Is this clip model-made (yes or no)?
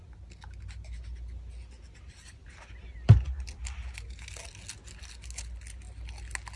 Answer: no